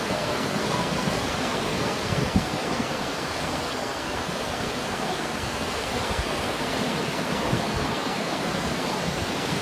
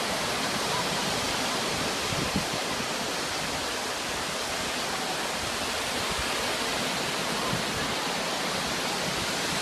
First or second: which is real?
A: second